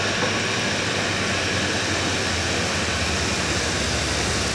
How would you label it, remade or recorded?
recorded